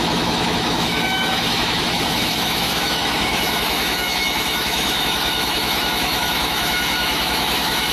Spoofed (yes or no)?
yes